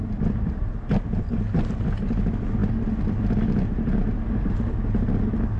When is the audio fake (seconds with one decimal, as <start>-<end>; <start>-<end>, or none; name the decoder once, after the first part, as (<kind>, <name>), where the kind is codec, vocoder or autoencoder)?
none